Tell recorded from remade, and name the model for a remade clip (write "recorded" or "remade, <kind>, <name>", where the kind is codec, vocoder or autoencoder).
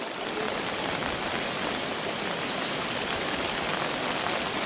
recorded